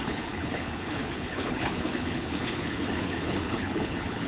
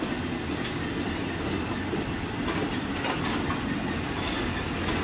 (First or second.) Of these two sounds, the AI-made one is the first